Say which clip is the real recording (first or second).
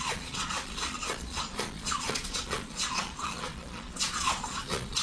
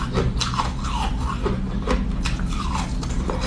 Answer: second